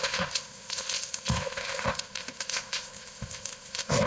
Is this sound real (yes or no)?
no